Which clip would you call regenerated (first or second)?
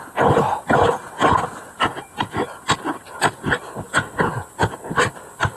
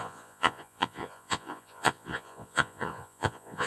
second